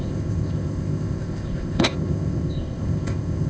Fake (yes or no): yes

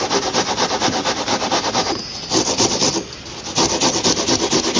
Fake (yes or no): no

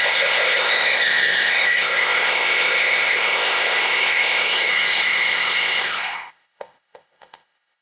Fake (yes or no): yes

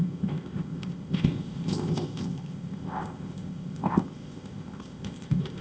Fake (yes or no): yes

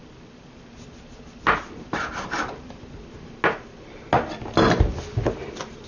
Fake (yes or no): no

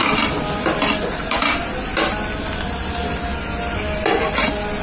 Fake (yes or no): no